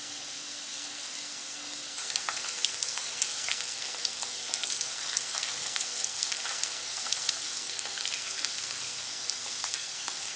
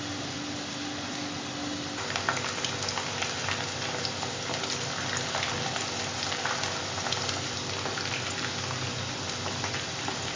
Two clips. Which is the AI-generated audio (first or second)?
first